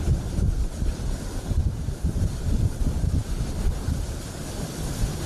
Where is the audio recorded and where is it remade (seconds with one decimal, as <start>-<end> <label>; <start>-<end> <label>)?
0.0-1.6 remade; 1.6-2.2 recorded; 2.2-5.3 remade